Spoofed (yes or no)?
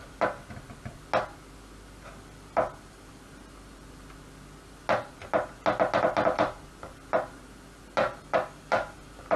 no